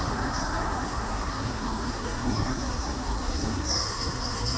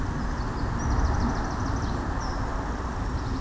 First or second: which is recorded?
second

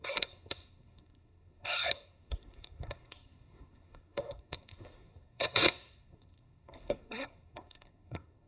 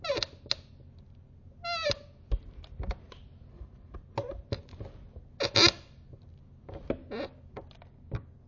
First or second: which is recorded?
second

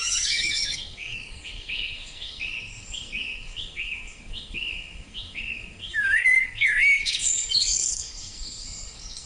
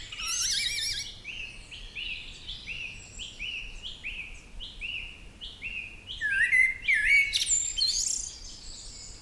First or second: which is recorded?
second